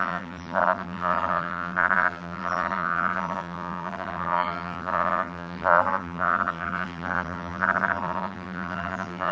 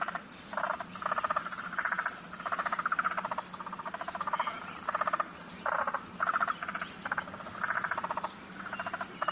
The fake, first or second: first